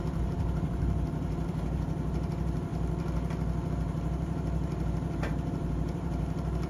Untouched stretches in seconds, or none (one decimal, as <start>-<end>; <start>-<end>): 2.7-3.7